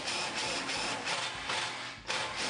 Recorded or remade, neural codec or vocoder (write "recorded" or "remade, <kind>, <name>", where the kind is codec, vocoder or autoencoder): recorded